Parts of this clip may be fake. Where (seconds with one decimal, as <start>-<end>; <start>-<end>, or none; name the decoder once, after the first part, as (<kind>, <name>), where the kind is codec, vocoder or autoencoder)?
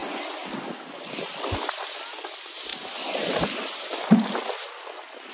none